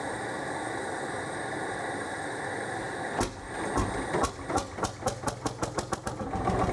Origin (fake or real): real